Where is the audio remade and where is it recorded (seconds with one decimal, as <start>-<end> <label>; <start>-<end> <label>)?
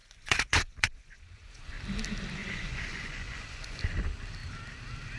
0.0-1.7 remade; 1.7-2.4 recorded; 2.4-3.8 remade; 3.8-5.2 recorded